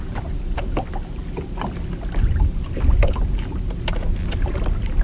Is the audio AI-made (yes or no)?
no